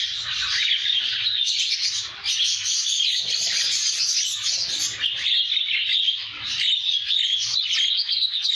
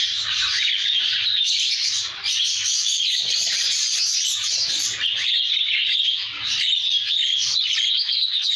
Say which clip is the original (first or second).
first